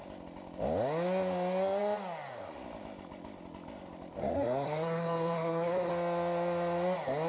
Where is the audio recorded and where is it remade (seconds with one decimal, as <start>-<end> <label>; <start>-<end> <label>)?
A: 0.0-4.2 recorded; 4.2-5.9 remade; 5.9-7.3 recorded